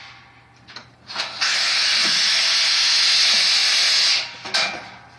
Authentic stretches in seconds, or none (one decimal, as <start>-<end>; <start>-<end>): 0.0-5.2